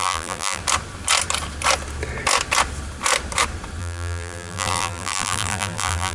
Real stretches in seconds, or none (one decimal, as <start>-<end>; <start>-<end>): 0.6-3.8